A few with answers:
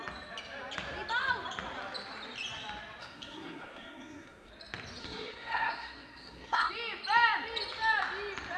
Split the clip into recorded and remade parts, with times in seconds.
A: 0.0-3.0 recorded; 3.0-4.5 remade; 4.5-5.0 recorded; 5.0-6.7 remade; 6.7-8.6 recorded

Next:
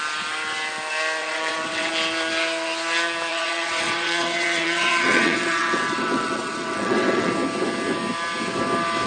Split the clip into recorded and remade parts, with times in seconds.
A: 0.0-1.2 recorded; 1.2-1.9 remade; 1.9-3.3 recorded; 3.3-7.3 remade; 7.3-9.1 recorded

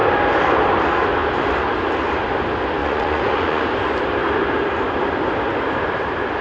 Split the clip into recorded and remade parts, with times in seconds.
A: 0.0-2.8 recorded; 2.8-3.6 remade; 3.6-6.4 recorded

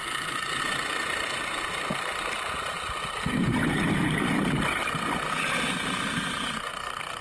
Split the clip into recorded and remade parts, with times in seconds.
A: 0.0-7.2 recorded

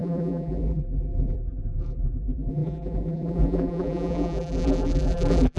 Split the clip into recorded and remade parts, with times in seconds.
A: 0.0-5.6 remade

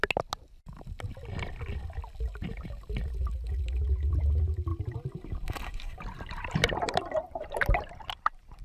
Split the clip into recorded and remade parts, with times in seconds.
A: 0.0-2.5 recorded; 2.5-3.2 remade; 3.2-4.7 recorded; 4.7-8.6 remade

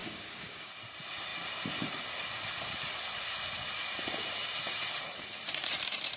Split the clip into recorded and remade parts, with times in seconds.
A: 0.0-0.7 remade; 0.7-6.2 recorded